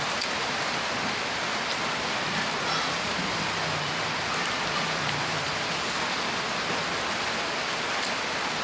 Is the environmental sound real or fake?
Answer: real